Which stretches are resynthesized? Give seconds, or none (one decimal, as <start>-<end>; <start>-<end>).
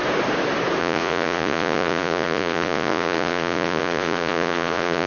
0.8-5.1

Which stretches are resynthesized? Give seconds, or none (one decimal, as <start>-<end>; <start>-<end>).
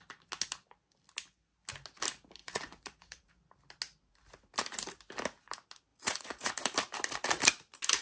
2.4-3.3; 5.9-6.5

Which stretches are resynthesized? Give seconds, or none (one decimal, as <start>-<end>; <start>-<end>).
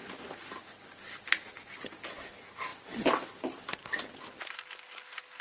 none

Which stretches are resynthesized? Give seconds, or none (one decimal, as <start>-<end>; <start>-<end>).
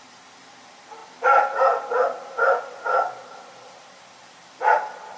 none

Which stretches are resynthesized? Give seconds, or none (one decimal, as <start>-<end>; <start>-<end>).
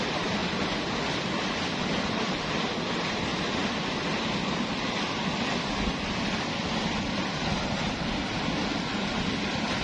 0.0-0.4; 1.1-9.8